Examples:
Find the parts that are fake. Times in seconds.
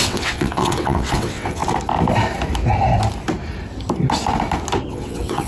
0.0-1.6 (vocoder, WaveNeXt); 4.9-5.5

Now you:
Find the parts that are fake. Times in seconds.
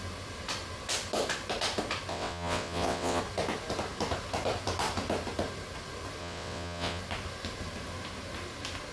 2.1-3.2 (vocoder, WaveNeXt); 6.2-7.0